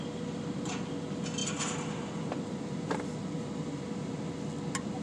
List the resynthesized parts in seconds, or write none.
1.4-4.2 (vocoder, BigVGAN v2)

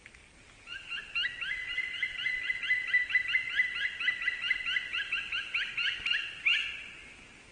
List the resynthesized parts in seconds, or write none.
1.6-2.5 (vocoder, BigVGAN v2)

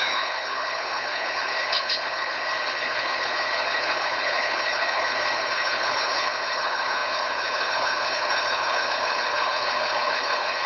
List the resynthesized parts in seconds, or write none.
0.0-10.7 (codec, HILCodec)